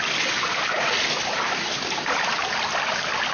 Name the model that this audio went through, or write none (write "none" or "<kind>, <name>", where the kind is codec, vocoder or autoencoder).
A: none